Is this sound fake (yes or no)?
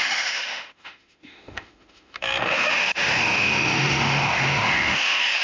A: yes